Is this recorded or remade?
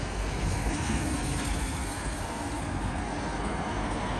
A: remade